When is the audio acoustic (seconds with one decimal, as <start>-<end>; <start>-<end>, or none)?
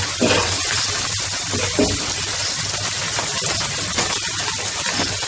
0.0-0.4; 3.6-5.3